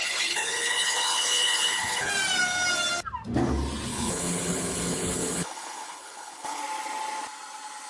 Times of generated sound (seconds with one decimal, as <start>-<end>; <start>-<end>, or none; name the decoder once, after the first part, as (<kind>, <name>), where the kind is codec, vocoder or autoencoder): 0.0-2.1 (codec, HILCodec); 3.9-6.6

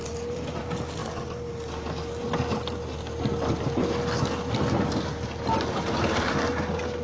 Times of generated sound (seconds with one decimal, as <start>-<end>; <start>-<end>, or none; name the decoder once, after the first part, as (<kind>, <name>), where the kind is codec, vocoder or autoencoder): 0.0-0.6 (vocoder, BigVGAN v2)

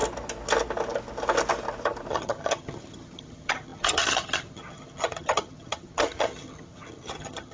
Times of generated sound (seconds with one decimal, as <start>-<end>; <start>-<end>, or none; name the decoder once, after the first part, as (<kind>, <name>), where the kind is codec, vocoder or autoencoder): 2.1-7.5 (vocoder, HiFi-GAN)

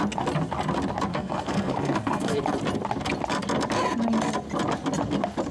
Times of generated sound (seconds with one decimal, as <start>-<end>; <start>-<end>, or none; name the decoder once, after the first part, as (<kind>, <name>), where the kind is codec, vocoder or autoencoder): 1.1-2.4 (codec, SNAC)

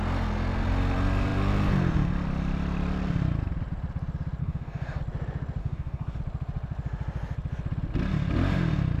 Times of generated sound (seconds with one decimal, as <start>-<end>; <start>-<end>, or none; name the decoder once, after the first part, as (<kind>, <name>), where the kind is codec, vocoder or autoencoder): 4.4-5.0 (codec, DAC); 5.6-6.2

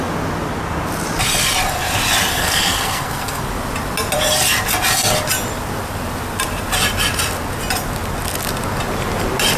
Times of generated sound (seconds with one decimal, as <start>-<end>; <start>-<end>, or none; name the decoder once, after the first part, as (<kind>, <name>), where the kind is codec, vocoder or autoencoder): 2.3-3.4 (codec, SNAC)

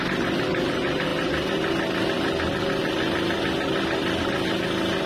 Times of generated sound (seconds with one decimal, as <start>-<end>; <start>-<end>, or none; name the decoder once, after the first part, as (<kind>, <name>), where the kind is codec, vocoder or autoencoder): none